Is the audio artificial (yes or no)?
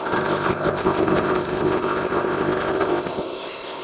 yes